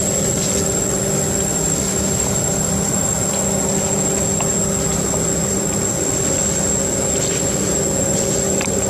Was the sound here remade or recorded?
recorded